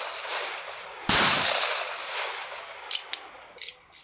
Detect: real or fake real